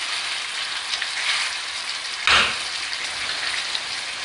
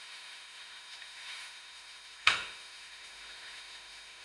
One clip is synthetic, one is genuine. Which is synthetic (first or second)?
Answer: second